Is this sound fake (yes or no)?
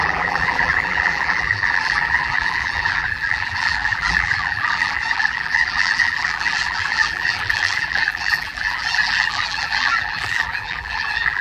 yes